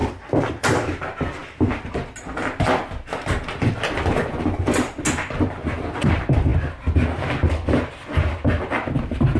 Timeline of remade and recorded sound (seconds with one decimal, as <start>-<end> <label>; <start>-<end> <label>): 0.0-0.5 recorded; 0.5-1.4 remade; 1.4-6.0 recorded; 6.0-6.5 remade; 6.5-8.9 recorded; 8.9-9.4 remade